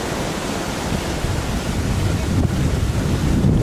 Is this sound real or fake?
real